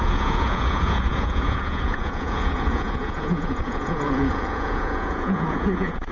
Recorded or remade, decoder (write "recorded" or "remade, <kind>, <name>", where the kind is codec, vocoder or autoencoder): remade, vocoder, Vocos